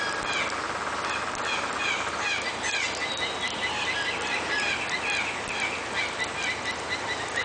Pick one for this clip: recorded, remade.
recorded